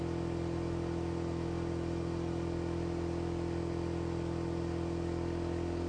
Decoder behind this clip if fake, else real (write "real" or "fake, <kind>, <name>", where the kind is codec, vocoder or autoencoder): real